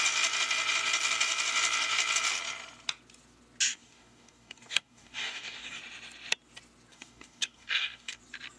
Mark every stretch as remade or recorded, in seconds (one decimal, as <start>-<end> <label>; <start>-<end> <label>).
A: 0.0-3.7 recorded; 3.7-5.8 remade; 5.8-6.9 recorded; 6.9-8.2 remade; 8.2-8.6 recorded